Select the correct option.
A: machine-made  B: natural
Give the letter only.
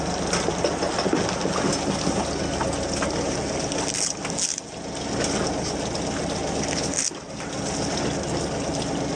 B